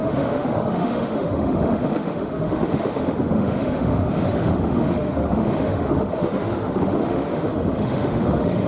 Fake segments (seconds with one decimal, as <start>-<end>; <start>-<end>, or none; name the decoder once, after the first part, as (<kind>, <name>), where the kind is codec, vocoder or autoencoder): 0.0-8.7 (autoencoder, DAC-VAE)